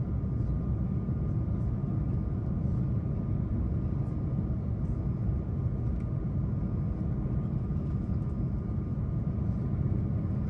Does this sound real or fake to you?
real